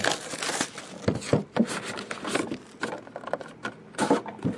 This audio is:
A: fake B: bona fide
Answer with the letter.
B